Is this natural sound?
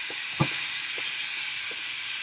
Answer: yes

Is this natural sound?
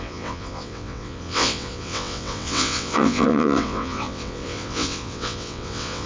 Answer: no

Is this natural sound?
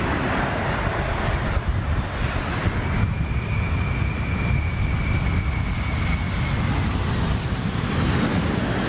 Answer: yes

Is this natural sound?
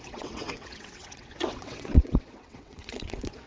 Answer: no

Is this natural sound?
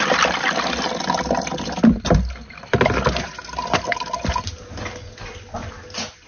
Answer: yes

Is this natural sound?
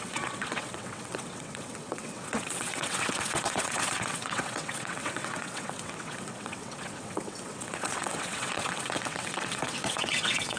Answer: no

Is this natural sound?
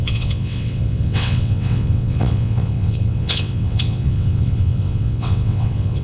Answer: no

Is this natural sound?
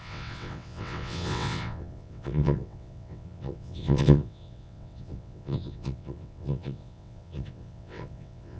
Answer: no